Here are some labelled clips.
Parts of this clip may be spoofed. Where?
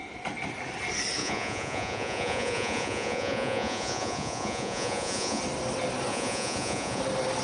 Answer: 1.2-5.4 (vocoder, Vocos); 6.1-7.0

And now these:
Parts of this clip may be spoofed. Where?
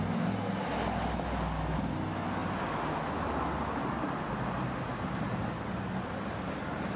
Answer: none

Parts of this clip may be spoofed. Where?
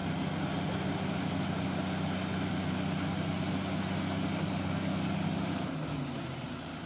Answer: none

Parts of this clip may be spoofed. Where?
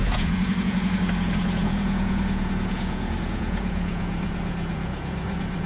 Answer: 0.0-5.7 (vocoder, Vocos)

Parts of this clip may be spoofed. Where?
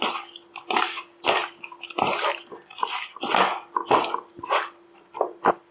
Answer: none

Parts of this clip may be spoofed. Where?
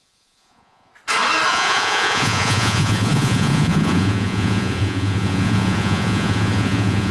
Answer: 0.0-0.9 (vocoder, Vocos); 1.5-7.1